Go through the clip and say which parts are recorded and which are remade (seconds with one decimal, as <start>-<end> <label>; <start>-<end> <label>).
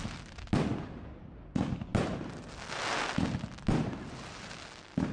0.0-5.1 recorded